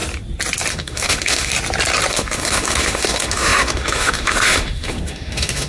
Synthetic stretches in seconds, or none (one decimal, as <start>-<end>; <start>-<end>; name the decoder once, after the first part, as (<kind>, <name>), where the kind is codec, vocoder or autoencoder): 0.7-1.5 (autoencoder, DAC-VAE); 2.1-5.7